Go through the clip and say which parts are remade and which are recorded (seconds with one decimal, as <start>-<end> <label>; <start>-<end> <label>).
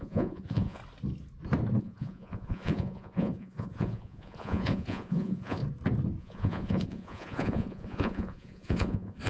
0.0-0.8 remade; 0.8-1.8 recorded; 1.8-5.6 remade; 5.6-6.2 recorded; 6.2-9.3 remade